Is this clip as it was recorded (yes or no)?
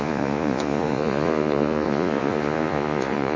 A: no